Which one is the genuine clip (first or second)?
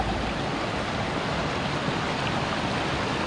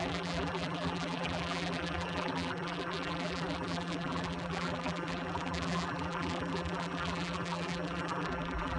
first